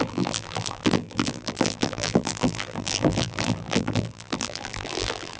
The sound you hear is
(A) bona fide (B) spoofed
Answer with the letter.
B